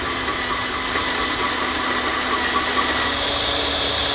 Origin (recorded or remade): recorded